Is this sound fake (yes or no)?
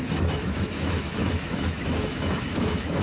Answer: yes